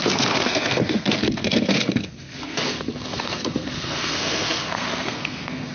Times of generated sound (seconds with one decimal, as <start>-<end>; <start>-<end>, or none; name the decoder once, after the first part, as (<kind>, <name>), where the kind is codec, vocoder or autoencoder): 0.0-5.7 (codec, SNAC)